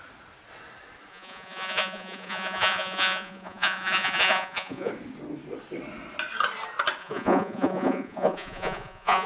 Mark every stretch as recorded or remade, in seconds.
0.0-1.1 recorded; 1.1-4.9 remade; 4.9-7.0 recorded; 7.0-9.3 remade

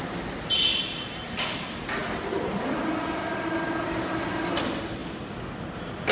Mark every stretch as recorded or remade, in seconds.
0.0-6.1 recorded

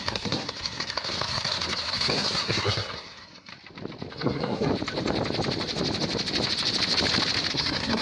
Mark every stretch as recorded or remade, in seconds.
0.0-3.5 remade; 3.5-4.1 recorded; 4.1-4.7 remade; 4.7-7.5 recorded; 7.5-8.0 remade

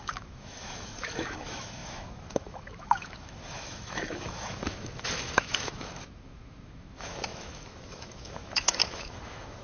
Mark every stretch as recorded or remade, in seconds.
0.0-9.6 remade

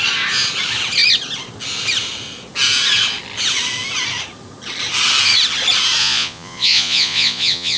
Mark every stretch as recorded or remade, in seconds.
0.0-6.0 recorded; 6.0-7.8 remade

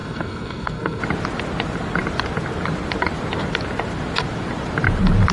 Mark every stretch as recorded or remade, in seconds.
0.0-1.0 remade; 1.0-5.3 recorded

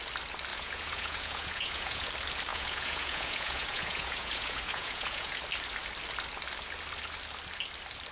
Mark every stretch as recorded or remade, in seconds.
0.0-0.5 recorded; 0.5-2.1 remade; 2.1-2.5 recorded; 2.5-5.4 remade; 5.4-8.1 recorded